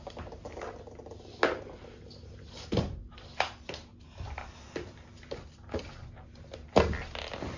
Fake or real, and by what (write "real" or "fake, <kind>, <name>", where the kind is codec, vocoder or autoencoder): real